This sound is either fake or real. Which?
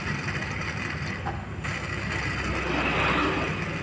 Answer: real